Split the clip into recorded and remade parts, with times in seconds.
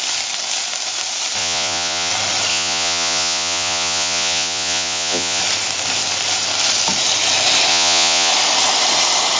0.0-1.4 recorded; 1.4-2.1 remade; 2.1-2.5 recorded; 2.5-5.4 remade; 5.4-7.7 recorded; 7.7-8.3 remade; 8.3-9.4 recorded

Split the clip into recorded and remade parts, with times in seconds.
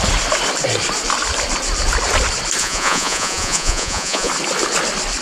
0.0-2.6 recorded; 2.6-4.3 remade; 4.3-5.2 recorded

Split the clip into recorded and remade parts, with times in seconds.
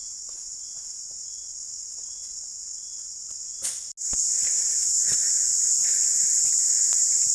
0.0-1.1 remade; 1.1-5.5 recorded; 5.5-7.3 remade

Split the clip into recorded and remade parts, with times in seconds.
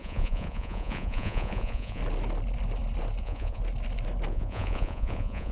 0.0-2.0 remade; 2.0-3.2 recorded; 3.2-3.6 remade; 3.6-4.3 recorded; 4.3-5.5 remade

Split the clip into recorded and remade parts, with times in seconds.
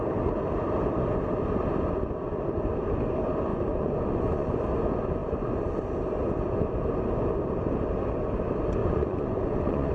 0.0-3.5 recorded; 3.5-4.6 remade; 4.6-8.8 recorded; 8.8-9.9 remade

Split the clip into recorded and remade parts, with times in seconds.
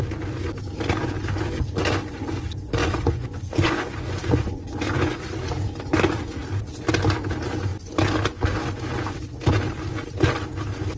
0.0-2.8 recorded; 2.8-5.2 remade; 5.2-11.0 recorded